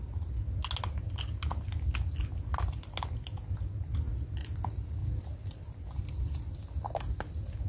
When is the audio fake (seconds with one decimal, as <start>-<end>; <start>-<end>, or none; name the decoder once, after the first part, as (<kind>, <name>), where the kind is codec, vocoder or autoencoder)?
none